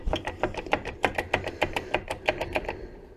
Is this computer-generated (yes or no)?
no